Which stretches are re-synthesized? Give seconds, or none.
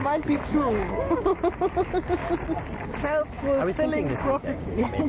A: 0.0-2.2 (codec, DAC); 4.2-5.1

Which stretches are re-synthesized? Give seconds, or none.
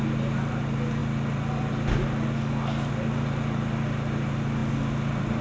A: none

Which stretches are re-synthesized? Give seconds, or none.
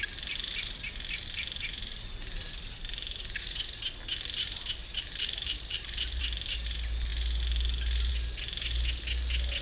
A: 4.8-6.2 (vocoder, BigVGAN v2)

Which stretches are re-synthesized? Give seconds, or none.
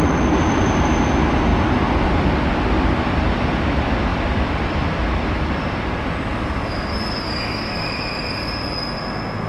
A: none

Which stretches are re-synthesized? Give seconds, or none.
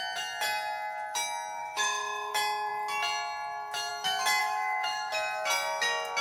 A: 1.6-2.3 (autoencoder, DAC-VAE); 4.4-5.1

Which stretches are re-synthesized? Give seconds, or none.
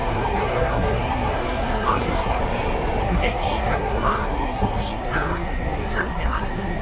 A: 0.0-2.4 (codec, SNAC); 3.0-6.8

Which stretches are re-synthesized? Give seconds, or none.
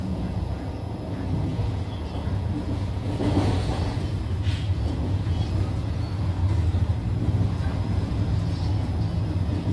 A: 0.0-6.4 (vocoder, Vocos); 7.5-9.7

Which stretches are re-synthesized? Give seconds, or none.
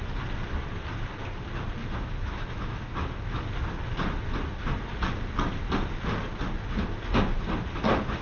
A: 1.8-3.4 (autoencoder, DAC-VAE)